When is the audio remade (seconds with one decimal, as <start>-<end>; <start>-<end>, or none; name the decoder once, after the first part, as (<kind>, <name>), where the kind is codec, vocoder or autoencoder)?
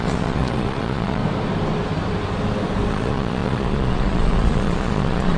0.0-1.2 (vocoder, Vocos); 2.9-5.4